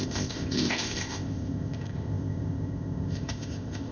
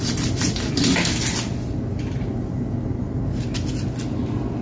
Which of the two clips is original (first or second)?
second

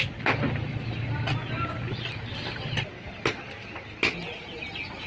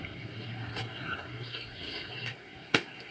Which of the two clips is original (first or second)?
first